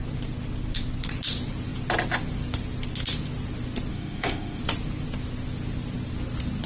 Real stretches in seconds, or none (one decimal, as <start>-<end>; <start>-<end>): 0.0-3.9; 4.6-6.7